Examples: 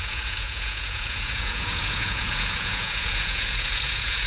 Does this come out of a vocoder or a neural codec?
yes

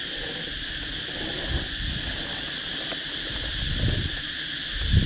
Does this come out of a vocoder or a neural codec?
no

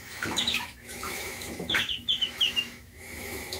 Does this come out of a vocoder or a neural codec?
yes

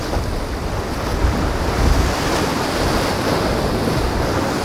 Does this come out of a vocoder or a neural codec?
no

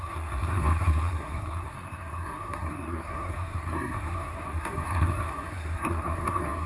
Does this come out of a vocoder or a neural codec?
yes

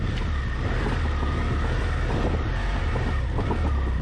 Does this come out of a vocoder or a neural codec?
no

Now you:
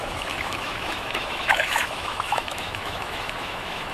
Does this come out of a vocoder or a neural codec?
yes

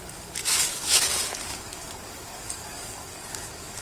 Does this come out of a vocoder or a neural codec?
yes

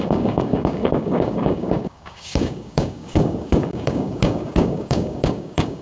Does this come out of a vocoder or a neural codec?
yes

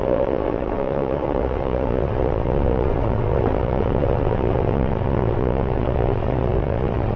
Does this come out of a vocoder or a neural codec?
yes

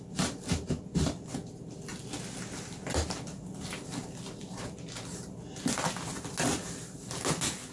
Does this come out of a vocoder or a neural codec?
no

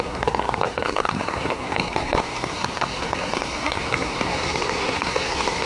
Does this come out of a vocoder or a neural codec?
yes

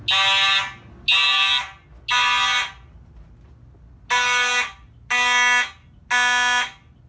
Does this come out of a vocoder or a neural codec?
no